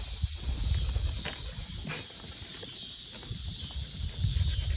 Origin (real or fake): real